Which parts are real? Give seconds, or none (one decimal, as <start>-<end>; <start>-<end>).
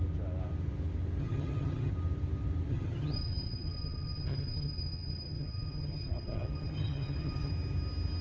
0.0-1.2; 1.9-2.7; 7.5-8.2